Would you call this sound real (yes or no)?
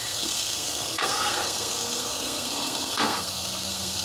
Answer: no